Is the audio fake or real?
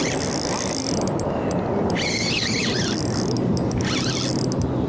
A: real